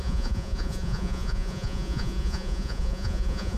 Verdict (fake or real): fake